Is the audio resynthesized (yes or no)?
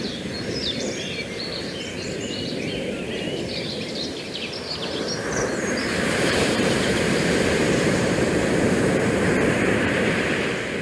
yes